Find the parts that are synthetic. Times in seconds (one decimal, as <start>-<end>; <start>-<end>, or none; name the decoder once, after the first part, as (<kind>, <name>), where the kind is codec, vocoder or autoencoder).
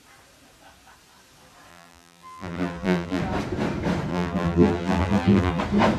1.7-3.2 (vocoder, BigVGAN v2); 4.1-5.6